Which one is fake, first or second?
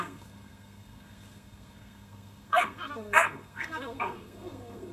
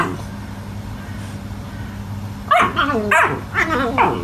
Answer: first